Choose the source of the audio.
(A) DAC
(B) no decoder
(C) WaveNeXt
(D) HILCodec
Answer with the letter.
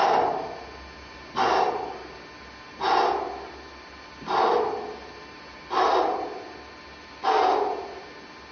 B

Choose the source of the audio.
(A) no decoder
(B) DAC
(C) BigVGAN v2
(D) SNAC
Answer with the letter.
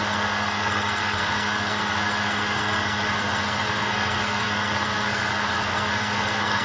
D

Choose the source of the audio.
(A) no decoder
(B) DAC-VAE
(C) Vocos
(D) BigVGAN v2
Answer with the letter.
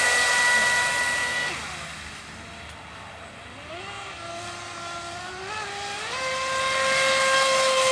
A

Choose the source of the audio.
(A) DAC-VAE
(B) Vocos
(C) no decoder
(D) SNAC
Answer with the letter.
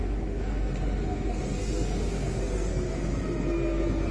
D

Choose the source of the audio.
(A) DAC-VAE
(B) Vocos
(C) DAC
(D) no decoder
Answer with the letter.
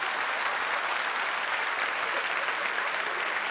D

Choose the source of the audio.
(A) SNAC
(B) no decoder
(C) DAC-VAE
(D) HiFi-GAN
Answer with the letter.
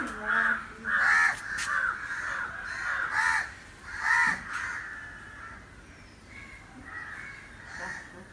B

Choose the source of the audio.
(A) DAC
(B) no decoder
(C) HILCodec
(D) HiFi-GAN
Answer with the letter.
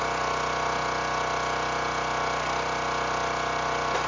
B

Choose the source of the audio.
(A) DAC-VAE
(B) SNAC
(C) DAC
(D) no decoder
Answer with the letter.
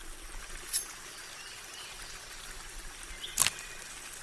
D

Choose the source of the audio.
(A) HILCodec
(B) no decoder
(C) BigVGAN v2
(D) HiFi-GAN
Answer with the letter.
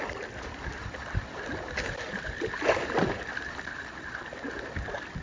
B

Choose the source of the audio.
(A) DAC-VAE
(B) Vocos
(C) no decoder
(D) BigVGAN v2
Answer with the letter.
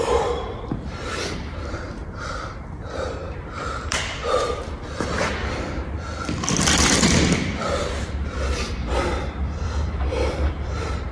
D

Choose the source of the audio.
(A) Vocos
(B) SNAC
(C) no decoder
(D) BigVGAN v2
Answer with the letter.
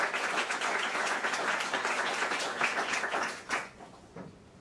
A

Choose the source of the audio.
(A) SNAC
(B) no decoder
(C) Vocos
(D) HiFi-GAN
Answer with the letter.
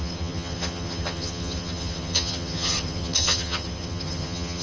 D